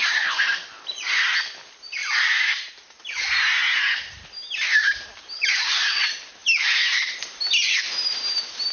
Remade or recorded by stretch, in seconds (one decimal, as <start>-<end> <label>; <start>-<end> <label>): 0.0-2.0 recorded; 2.0-2.7 remade; 2.7-6.4 recorded; 6.4-8.7 remade